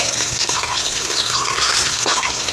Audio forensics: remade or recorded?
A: remade